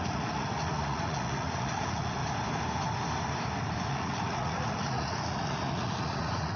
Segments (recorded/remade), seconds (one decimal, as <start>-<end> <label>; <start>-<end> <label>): 0.0-2.2 remade; 2.2-3.9 recorded; 3.9-6.6 remade